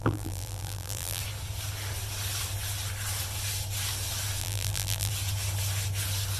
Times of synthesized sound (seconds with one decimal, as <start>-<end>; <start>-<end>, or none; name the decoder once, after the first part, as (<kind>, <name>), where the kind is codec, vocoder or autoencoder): 0.0-1.2 (vocoder, BigVGAN v2); 4.4-5.1